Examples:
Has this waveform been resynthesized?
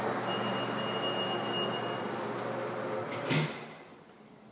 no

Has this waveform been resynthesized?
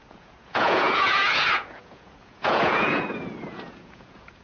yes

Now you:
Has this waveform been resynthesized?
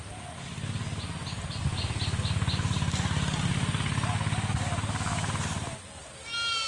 no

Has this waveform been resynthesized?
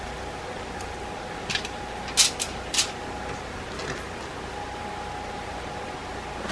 no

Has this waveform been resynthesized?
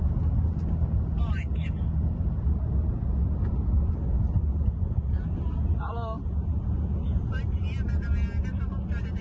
no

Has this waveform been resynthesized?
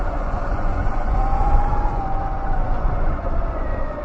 yes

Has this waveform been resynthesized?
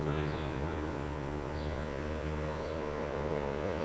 yes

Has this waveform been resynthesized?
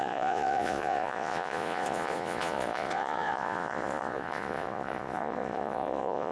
yes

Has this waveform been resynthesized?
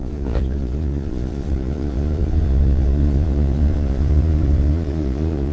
yes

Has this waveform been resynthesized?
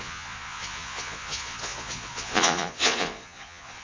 yes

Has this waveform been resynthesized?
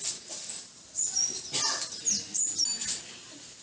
no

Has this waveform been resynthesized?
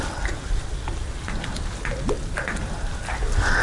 no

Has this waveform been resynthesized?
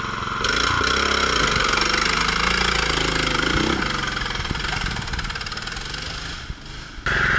no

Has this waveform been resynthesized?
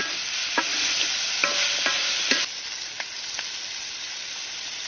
no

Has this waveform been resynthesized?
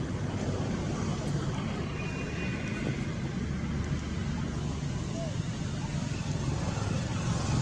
no